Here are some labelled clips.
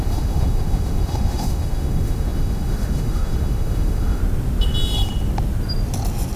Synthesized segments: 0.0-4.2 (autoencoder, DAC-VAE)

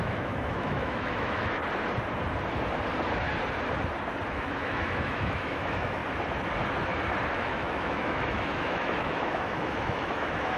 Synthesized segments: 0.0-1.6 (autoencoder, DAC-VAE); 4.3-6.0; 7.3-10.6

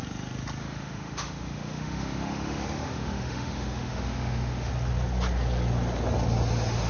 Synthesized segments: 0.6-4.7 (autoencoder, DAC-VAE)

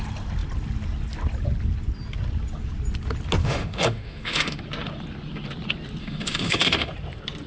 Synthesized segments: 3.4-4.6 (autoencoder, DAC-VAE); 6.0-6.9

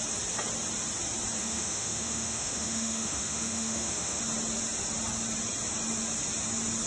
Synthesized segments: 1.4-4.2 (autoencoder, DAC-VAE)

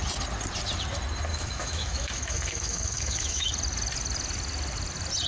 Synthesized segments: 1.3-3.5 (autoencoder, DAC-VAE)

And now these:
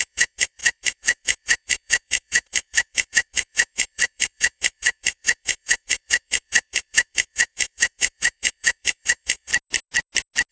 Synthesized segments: 0.0-9.5 (autoencoder, DAC-VAE)